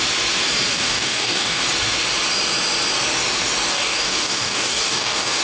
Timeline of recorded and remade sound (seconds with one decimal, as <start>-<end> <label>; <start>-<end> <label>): 0.0-0.7 recorded; 0.7-1.6 remade; 1.6-3.7 recorded; 3.7-5.4 remade